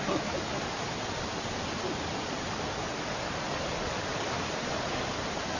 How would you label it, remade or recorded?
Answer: recorded